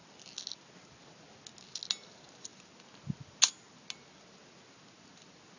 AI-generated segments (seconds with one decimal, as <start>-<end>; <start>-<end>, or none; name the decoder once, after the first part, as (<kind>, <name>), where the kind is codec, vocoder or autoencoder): none